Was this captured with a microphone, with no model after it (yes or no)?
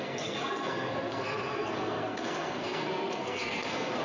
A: no